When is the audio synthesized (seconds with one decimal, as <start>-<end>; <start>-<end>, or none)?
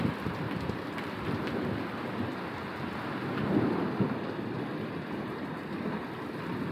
0.0-2.3; 3.5-6.7